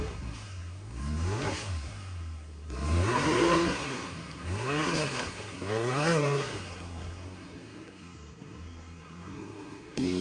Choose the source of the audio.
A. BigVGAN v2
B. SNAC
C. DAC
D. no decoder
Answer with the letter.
B